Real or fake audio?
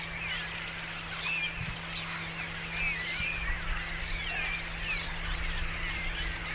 real